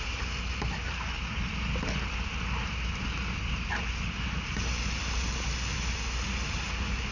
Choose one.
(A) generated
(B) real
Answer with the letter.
B